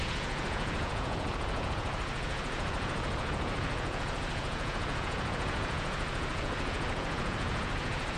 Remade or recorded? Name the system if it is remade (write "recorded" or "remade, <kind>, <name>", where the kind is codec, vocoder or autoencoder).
remade, vocoder, Vocos